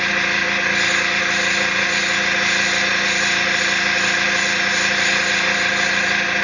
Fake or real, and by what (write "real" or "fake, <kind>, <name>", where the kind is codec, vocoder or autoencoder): real